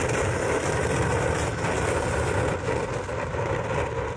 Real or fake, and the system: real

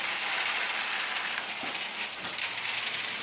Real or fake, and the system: real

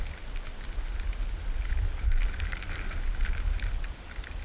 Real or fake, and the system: real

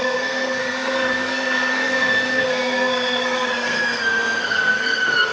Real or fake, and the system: fake, codec, SNAC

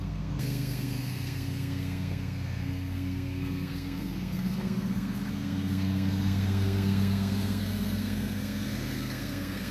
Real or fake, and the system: fake, codec, SNAC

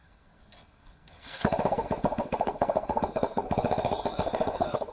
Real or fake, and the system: fake, codec, SNAC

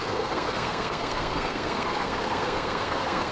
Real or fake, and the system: fake, codec, SNAC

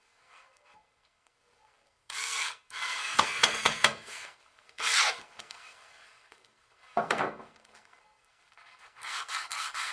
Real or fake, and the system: fake, codec, SNAC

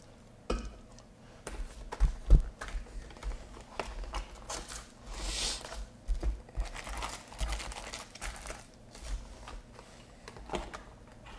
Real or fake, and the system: real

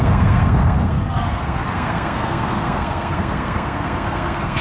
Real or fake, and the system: fake, codec, SNAC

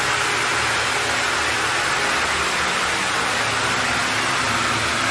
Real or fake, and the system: real